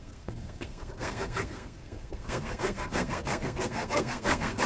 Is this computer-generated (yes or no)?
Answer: yes